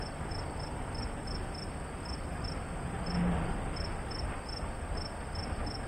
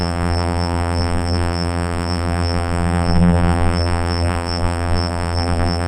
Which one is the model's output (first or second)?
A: second